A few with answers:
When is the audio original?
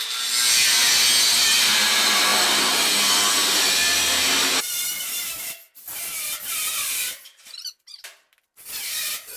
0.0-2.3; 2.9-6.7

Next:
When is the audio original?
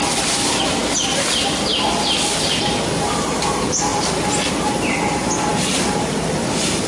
0.0-6.9